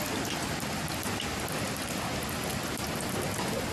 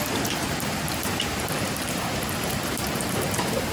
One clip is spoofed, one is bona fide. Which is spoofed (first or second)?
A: second